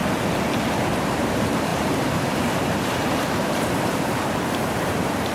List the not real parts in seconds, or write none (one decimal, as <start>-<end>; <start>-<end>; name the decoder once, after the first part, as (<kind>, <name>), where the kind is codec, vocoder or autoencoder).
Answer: 1.0-5.3 (vocoder, BigVGAN v2)